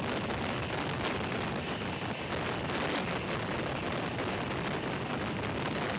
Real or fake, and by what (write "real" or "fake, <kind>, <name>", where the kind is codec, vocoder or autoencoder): real